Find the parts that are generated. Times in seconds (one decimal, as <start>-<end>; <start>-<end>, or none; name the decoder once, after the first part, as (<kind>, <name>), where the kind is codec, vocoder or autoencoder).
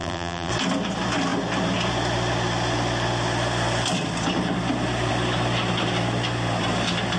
0.0-0.5 (vocoder, BigVGAN v2)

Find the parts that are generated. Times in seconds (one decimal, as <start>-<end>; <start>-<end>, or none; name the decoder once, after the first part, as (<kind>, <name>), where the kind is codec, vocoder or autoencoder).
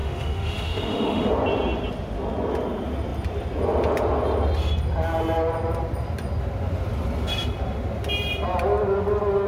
0.0-1.3 (autoencoder, DAC-VAE)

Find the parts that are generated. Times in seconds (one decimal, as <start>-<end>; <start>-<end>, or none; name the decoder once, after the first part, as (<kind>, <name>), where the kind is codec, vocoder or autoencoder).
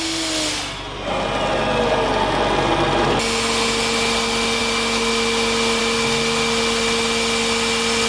none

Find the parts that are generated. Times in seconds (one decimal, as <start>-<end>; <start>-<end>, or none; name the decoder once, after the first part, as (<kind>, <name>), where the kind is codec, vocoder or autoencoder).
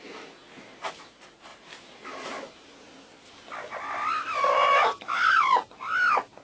none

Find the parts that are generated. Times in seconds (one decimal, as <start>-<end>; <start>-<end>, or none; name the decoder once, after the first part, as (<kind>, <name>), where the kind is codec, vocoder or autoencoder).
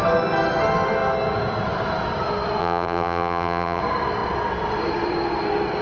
2.6-3.8 (vocoder, BigVGAN v2)